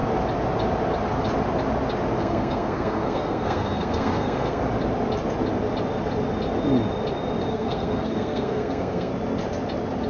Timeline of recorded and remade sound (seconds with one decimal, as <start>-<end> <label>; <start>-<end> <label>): 0.0-2.2 recorded; 2.2-4.6 remade; 4.6-7.5 recorded; 7.5-9.1 remade; 9.1-10.1 recorded